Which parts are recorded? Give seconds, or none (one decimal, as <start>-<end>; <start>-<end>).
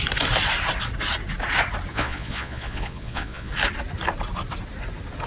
0.0-1.9; 3.5-5.3